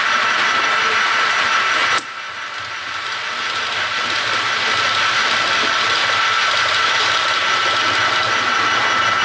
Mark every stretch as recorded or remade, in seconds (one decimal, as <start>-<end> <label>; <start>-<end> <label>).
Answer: 0.0-9.2 recorded